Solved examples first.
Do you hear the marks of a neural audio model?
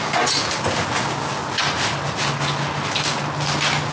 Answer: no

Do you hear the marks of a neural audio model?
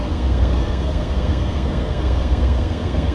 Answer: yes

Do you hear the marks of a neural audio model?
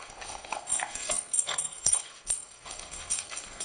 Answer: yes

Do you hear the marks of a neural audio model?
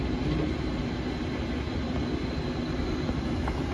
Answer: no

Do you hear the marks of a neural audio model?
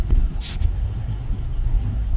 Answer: yes